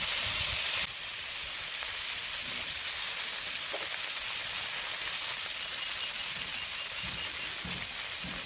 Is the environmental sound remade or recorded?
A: recorded